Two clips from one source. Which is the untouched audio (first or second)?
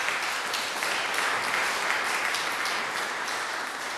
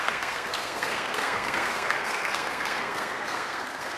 first